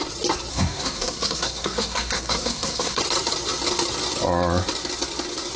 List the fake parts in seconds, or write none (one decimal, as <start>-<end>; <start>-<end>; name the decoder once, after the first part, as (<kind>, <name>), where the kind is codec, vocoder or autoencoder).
0.5-3.0 (codec, SNAC)